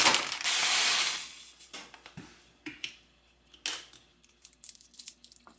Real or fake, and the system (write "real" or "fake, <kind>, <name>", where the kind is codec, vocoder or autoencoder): real